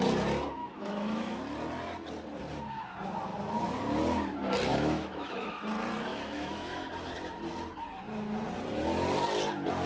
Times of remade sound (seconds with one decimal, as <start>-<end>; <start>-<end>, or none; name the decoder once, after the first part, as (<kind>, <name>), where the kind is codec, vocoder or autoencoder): 0.6-1.4 (autoencoder, DAC-VAE); 4.7-5.5; 6.1-6.9